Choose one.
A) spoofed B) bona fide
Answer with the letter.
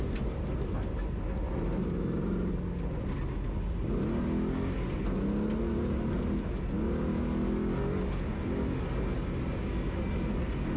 B